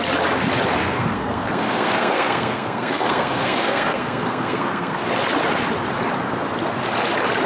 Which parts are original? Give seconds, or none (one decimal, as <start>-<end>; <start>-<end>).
0.0-0.8; 5.1-7.5